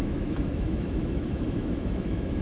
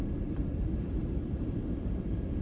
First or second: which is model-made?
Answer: first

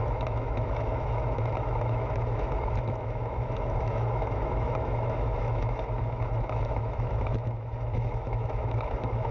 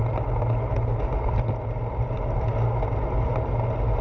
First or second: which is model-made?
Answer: first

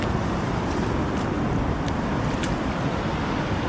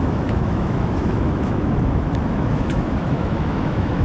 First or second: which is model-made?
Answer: second